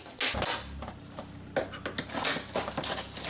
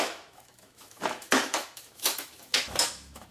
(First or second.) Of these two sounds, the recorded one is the first